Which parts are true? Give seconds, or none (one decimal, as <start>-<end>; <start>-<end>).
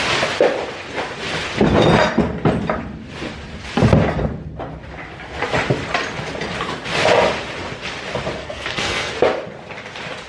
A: 0.0-8.4; 9.1-10.3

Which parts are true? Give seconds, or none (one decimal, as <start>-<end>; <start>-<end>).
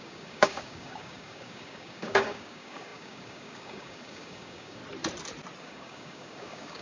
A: 4.8-5.6